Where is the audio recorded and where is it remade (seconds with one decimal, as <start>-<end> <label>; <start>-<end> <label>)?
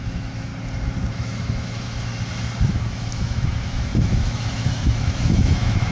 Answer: 0.0-0.5 remade; 0.5-1.1 recorded; 1.1-2.1 remade; 2.1-2.7 recorded; 2.7-5.9 remade